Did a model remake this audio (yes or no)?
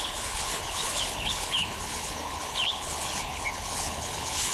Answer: yes